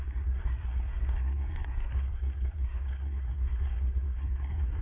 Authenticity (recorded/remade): remade